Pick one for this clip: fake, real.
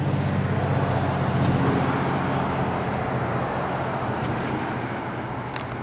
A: real